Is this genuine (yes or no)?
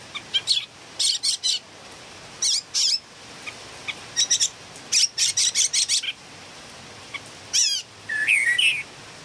yes